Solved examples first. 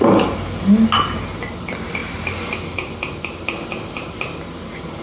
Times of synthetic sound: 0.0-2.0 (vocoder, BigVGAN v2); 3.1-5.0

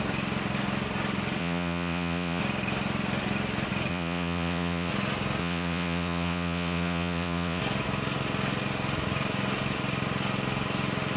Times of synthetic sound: 1.4-2.4 (vocoder, Vocos); 3.9-4.9; 5.4-7.6

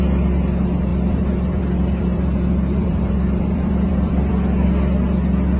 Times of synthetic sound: 0.9-4.3 (vocoder, BigVGAN v2)

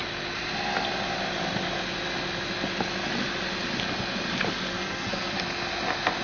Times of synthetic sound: 4.7-5.3 (codec, SNAC)

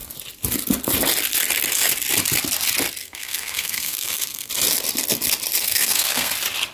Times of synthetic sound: 3.0-4.5 (codec, SNAC); 5.6-6.3

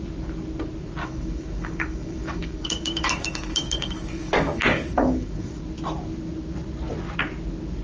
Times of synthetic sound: 1.0-5.6 (codec, DAC)